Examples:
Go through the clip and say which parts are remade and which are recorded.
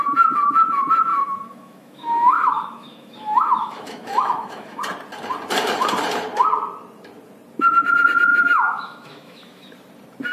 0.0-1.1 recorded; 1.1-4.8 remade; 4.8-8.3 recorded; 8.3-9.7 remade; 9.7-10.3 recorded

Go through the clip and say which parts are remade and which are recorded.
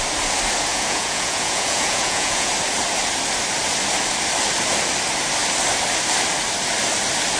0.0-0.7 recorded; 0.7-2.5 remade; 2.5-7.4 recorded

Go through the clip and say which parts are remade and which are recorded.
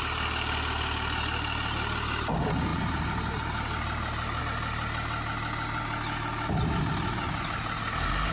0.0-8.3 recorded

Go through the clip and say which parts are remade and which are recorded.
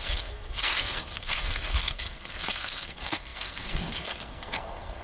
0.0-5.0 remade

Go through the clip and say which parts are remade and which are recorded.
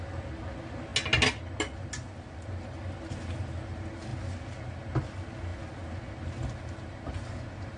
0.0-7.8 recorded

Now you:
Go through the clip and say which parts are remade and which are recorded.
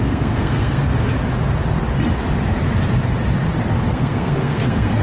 0.0-0.9 remade; 0.9-3.9 recorded; 3.9-5.0 remade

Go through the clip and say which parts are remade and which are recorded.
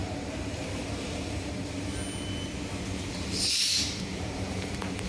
0.0-2.0 remade; 2.0-3.1 recorded; 3.1-5.1 remade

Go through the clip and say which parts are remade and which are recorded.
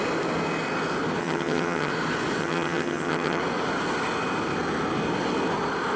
0.0-1.2 recorded; 1.2-1.9 remade; 1.9-2.4 recorded; 2.4-3.4 remade; 3.4-6.0 recorded